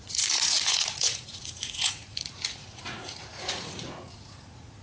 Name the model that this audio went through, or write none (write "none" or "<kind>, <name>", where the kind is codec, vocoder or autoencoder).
vocoder, Vocos